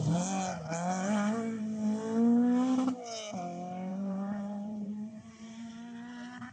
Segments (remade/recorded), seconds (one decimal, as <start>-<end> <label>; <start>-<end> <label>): 0.0-3.9 recorded; 3.9-5.7 remade; 5.7-6.5 recorded